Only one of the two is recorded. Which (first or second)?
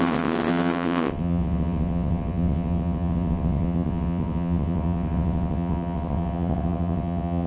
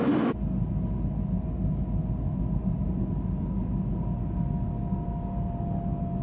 second